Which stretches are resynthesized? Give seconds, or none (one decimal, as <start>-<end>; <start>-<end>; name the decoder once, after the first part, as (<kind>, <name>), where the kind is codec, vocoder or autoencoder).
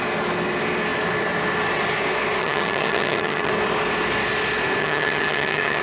2.4-3.5 (vocoder, HiFi-GAN); 4.8-5.8